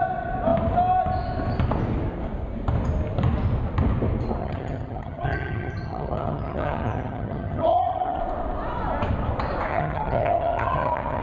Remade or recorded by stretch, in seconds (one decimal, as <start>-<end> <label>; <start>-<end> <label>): 0.0-4.4 recorded; 4.4-8.2 remade; 8.2-9.7 recorded; 9.7-11.2 remade